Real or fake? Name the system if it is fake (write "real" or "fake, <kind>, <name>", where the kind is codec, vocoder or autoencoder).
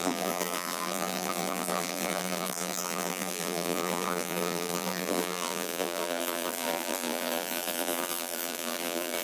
fake, vocoder, BigVGAN v2